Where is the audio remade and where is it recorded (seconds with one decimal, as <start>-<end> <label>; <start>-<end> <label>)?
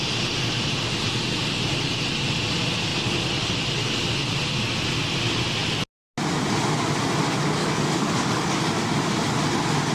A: 0.0-7.6 recorded; 7.6-8.6 remade; 8.6-9.9 recorded